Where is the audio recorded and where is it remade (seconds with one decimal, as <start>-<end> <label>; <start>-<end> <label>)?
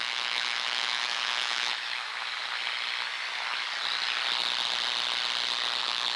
0.0-2.1 remade; 2.1-5.8 recorded; 5.8-6.2 remade